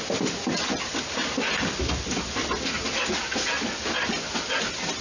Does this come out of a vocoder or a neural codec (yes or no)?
no